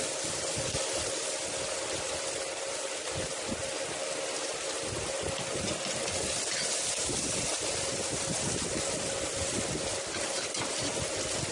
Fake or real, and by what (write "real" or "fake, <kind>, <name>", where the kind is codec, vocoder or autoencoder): real